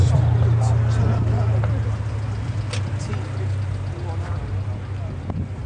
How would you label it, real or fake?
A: real